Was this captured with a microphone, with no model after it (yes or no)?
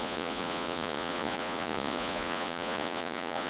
no